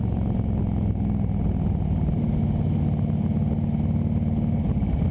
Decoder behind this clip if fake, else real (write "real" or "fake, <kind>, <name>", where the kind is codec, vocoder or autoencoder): real